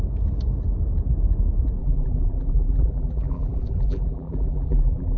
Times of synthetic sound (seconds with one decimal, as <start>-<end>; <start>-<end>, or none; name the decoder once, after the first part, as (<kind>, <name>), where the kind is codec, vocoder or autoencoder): 1.8-5.2 (vocoder, BigVGAN v2)